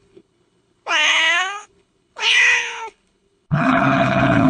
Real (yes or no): no